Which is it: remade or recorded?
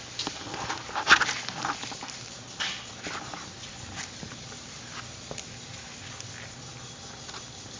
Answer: recorded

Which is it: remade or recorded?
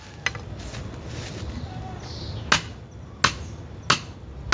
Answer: recorded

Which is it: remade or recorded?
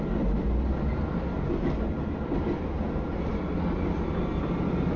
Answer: recorded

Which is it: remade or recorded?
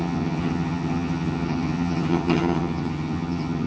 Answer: remade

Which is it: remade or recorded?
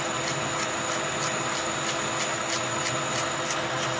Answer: recorded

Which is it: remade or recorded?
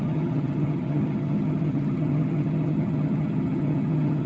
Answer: remade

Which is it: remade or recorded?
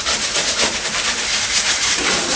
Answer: recorded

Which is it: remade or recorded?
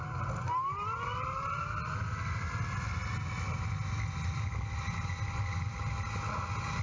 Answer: recorded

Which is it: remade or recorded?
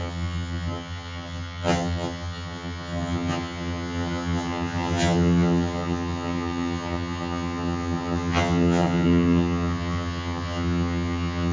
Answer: remade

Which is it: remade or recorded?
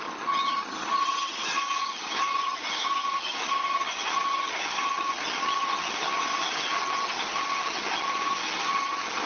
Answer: remade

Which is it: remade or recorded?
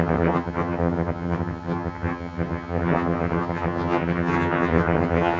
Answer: remade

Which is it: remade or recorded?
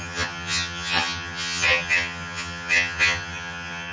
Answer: remade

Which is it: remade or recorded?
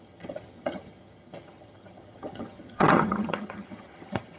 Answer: remade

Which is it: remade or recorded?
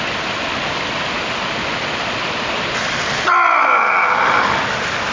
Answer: recorded